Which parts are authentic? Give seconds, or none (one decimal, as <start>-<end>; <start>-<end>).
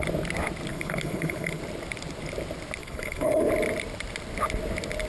0.0-0.7; 1.6-2.8; 3.5-5.1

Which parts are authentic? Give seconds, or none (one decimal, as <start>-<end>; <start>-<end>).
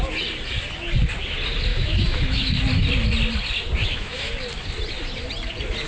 0.0-1.7; 2.6-3.8; 4.3-5.9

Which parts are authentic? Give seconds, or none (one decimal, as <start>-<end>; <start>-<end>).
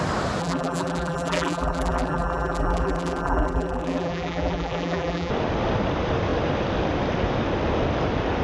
0.0-0.4; 5.3-8.4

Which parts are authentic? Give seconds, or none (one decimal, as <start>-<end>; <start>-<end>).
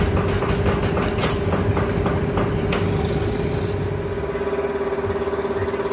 0.0-5.9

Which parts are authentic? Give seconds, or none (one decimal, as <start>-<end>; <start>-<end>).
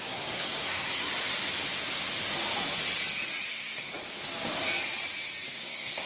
1.1-3.5; 3.9-5.5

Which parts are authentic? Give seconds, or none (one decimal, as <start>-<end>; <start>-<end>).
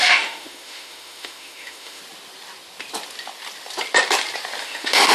2.0-4.6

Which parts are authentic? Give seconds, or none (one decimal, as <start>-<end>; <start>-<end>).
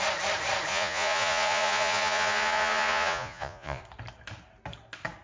0.0-0.7; 3.8-5.2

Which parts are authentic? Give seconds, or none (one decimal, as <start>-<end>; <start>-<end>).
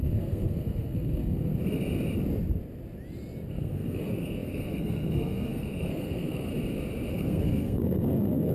1.5-3.5; 6.5-7.1